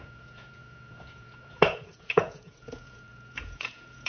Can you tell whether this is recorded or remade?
remade